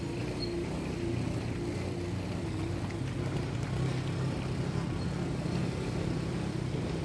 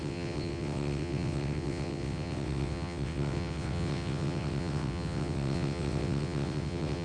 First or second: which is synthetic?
second